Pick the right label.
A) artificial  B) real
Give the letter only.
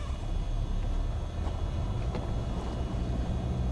B